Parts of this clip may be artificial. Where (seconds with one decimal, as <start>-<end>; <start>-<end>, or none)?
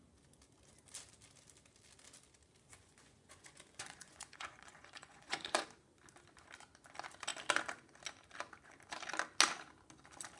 2.7-5.6